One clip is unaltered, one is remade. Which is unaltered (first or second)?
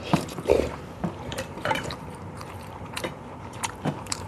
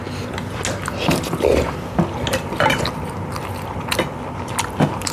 second